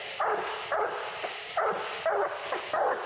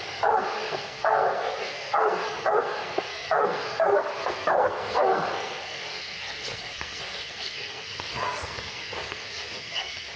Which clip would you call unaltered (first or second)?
first